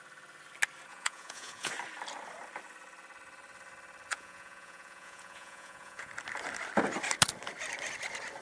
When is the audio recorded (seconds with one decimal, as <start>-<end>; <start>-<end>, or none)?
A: 0.0-0.9; 1.7-4.1; 6.1-8.4